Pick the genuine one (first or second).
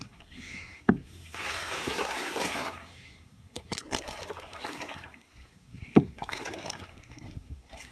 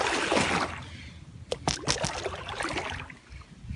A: second